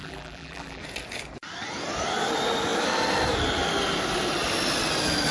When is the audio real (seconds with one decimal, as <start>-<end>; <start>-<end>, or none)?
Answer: 0.8-5.3